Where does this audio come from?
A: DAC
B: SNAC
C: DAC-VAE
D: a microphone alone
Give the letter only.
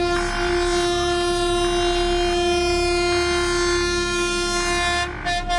D